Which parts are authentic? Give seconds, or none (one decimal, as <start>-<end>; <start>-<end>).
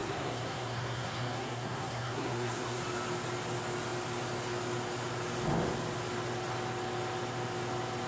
2.8-8.1